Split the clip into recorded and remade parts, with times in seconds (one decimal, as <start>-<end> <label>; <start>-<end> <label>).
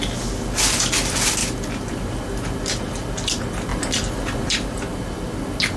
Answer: 0.0-5.8 recorded